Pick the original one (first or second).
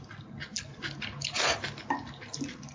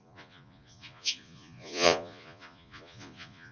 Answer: first